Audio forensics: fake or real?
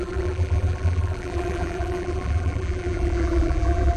fake